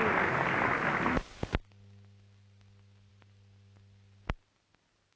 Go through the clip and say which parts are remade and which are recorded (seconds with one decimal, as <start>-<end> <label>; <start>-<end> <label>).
0.0-5.2 recorded